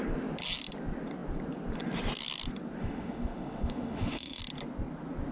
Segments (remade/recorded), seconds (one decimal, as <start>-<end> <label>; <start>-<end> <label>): 0.0-2.8 recorded; 2.8-4.4 remade; 4.4-5.3 recorded